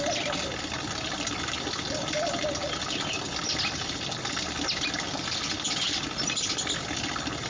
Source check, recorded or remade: recorded